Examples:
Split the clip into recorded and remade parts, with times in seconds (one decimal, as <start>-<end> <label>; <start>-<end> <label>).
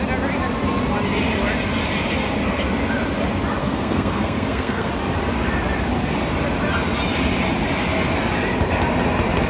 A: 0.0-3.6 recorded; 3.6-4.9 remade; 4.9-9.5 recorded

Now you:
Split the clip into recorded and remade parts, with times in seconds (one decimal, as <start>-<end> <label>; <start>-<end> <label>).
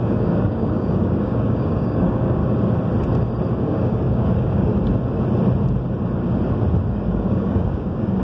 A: 0.0-2.4 remade; 2.4-3.6 recorded; 3.6-4.7 remade; 4.7-6.9 recorded; 6.9-8.2 remade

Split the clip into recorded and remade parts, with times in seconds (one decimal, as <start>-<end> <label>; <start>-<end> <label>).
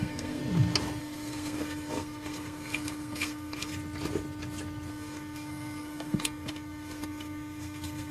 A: 0.0-0.4 remade; 0.4-1.0 recorded; 1.0-3.7 remade; 3.7-4.9 recorded; 4.9-8.1 remade